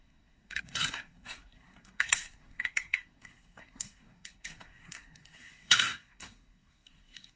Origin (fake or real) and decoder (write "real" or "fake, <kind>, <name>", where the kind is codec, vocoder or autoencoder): fake, codec, SNAC